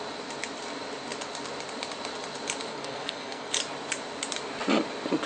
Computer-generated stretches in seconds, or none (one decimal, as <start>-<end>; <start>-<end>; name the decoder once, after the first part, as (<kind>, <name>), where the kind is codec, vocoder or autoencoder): 2.7-3.5 (codec, SNAC)